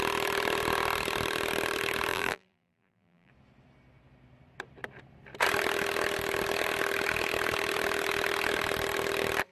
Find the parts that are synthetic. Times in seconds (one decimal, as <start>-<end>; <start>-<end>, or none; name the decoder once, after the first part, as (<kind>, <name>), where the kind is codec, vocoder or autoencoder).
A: 2.1-3.3 (vocoder, BigVGAN v2)